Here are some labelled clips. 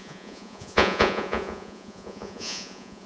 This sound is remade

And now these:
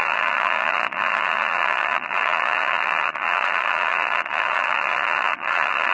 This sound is remade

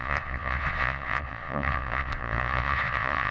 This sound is remade